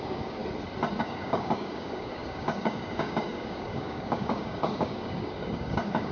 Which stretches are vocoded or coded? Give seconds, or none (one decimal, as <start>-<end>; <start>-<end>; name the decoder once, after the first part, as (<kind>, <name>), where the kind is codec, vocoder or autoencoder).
0.0-0.4 (codec, DAC); 1.0-6.1